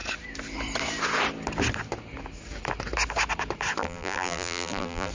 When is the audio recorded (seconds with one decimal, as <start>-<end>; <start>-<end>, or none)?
0.0-3.8